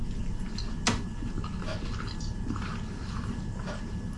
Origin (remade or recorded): recorded